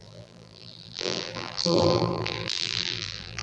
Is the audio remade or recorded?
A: remade